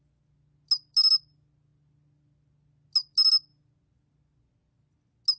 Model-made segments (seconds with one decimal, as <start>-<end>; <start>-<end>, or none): none